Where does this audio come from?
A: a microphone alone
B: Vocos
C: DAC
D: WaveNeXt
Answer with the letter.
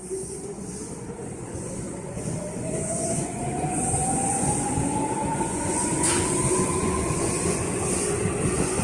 B